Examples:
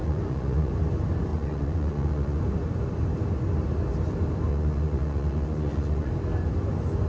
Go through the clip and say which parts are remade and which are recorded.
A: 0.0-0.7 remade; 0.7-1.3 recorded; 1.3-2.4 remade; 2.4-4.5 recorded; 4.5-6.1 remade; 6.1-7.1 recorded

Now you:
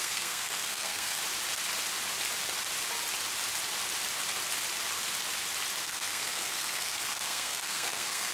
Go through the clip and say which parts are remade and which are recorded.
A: 0.0-1.2 remade; 1.2-5.8 recorded; 5.8-8.3 remade

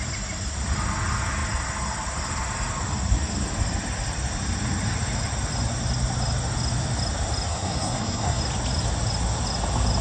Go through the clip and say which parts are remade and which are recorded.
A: 0.0-7.5 recorded; 7.5-8.4 remade; 8.4-10.0 recorded

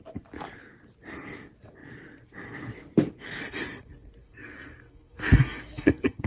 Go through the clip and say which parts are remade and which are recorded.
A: 0.0-4.2 recorded; 4.2-6.3 remade

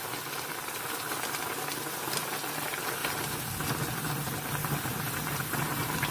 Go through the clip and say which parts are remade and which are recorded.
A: 0.0-3.0 recorded; 3.0-3.7 remade; 3.7-4.6 recorded; 4.6-6.1 remade

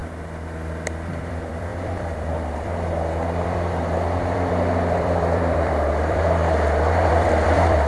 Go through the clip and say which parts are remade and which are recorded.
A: 0.0-1.1 recorded; 1.1-6.4 remade; 6.4-7.1 recorded; 7.1-7.9 remade